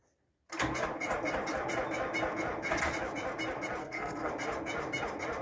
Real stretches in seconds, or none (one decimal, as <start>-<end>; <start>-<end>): 0.0-3.8; 4.3-5.4